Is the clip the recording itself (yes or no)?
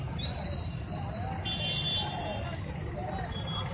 yes